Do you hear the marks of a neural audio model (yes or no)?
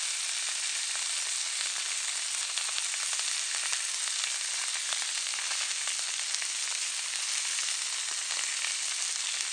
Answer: no